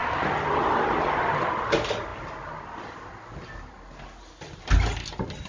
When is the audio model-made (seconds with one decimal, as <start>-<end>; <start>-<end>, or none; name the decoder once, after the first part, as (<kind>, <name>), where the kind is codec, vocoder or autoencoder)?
none